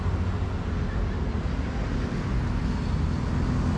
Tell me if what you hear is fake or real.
real